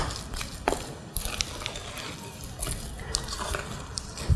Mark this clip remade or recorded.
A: recorded